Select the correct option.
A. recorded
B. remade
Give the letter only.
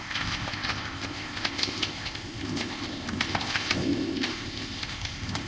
B